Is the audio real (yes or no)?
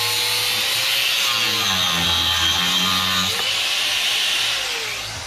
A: yes